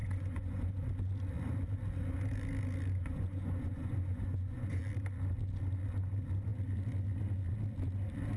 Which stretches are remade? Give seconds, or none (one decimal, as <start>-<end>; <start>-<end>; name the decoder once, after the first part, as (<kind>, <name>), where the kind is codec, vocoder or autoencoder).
0.0-0.7 (vocoder, Vocos); 3.0-4.8